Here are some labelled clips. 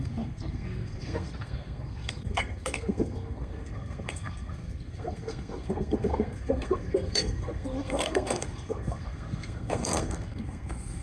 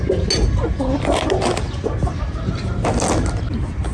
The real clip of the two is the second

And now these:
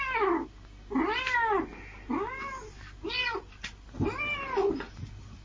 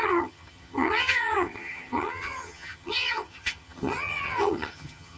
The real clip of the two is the first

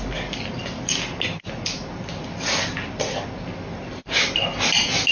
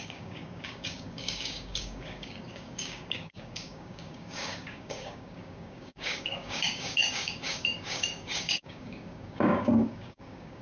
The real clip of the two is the first